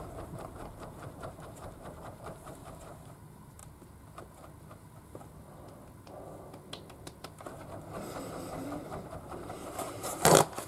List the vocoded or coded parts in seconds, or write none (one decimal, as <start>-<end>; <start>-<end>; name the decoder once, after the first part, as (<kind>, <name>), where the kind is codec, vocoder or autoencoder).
0.0-3.6 (vocoder, BigVGAN v2); 8.2-10.7